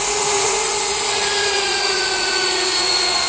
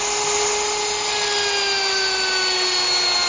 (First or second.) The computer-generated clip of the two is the first